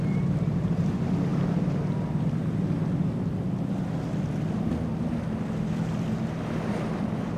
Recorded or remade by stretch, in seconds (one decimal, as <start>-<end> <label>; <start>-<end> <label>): 0.0-1.3 remade; 1.3-5.7 recorded; 5.7-7.4 remade